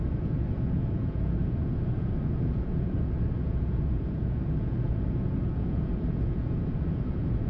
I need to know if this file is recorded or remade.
remade